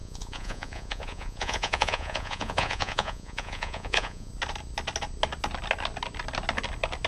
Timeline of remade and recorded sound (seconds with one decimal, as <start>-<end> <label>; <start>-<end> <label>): 0.0-4.3 remade; 4.3-7.1 recorded